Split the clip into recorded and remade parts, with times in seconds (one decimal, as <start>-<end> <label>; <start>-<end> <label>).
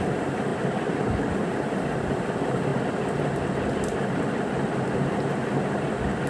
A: 0.0-0.5 remade; 0.5-1.3 recorded; 1.3-2.7 remade; 2.7-6.3 recorded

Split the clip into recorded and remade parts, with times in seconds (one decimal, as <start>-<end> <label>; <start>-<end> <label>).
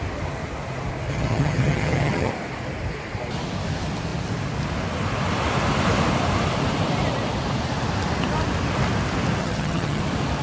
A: 0.0-1.1 recorded; 1.1-2.3 remade; 2.3-9.4 recorded; 9.4-10.0 remade; 10.0-10.4 recorded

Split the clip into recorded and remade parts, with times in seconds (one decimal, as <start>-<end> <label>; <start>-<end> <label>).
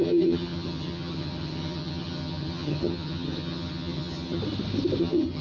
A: 0.0-4.4 remade; 4.4-5.0 recorded; 5.0-5.4 remade